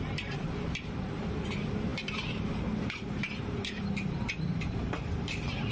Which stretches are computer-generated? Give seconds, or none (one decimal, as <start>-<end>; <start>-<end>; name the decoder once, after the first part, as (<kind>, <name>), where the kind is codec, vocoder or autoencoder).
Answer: 0.0-5.7 (vocoder, BigVGAN v2)